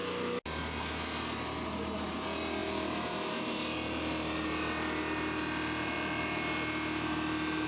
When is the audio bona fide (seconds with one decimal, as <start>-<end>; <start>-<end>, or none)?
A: 0.0-7.7